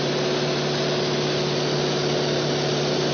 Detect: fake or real real